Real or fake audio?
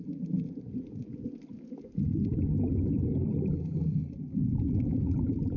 real